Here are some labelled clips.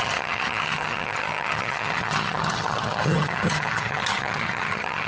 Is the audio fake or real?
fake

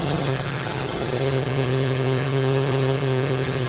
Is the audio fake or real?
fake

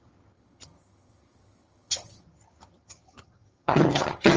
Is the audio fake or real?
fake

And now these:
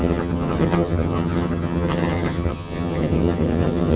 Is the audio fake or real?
fake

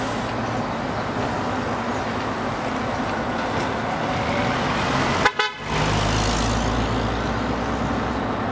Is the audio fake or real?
real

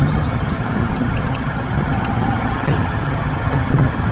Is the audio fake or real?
fake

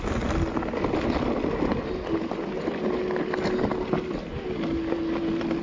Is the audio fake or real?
real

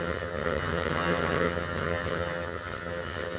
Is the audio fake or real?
fake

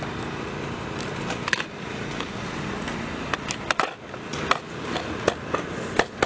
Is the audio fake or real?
real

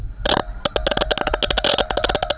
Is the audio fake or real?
real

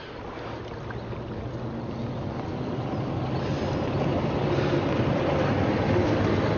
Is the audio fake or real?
real